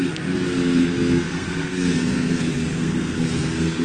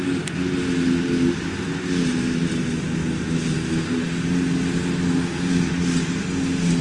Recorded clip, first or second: second